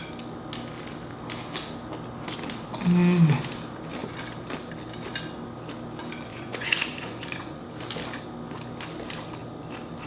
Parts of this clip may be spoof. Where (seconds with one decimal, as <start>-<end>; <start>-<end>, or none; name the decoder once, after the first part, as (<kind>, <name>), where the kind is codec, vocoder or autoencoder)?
6.3-7.6 (vocoder, Vocos)